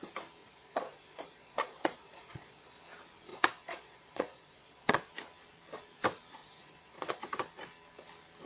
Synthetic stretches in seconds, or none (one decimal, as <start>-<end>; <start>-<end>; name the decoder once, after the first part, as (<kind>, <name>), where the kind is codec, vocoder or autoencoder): 0.4-2.8 (vocoder, Vocos); 3.3-5.1; 6.4-7.2